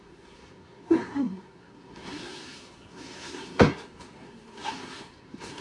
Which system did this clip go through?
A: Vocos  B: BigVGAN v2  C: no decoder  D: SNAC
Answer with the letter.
D